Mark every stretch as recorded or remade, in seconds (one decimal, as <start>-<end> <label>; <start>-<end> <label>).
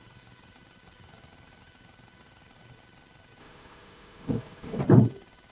0.0-3.4 recorded; 3.4-4.8 remade; 4.8-5.5 recorded